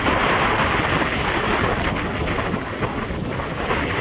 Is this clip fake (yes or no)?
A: no